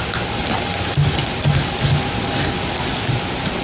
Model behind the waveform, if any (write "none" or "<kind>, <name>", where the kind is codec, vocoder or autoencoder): none